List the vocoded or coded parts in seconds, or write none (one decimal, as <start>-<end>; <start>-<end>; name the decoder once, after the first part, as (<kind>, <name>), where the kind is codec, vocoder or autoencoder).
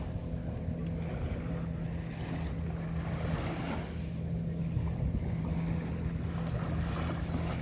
none